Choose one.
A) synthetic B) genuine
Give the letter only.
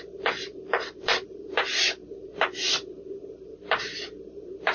A